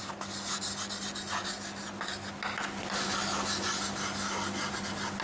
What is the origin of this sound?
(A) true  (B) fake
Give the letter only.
A